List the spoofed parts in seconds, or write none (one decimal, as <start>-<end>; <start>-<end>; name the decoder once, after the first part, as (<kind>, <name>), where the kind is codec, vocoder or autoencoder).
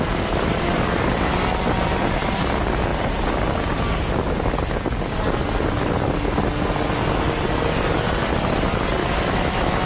9.0-9.9 (autoencoder, DAC-VAE)